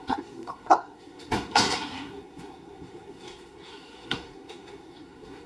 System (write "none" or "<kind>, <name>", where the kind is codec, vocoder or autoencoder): codec, SNAC